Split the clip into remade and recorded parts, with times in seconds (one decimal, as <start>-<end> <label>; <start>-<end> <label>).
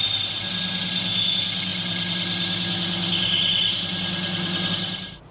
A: 0.0-5.3 recorded